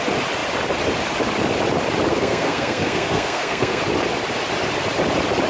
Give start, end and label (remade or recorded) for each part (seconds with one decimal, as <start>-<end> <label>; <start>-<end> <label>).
0.0-2.1 recorded; 2.1-3.8 remade; 3.8-5.5 recorded